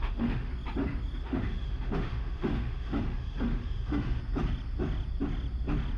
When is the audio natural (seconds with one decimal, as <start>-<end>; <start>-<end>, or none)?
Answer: 0.5-1.2; 4.2-6.0